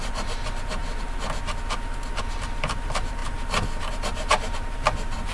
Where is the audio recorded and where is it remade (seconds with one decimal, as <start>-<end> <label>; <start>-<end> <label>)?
0.0-0.8 remade; 0.8-2.2 recorded; 2.2-5.3 remade